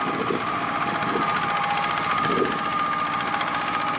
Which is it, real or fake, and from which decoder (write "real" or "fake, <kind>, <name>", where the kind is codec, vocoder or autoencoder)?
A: real